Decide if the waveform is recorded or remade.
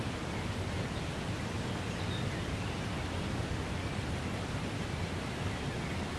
recorded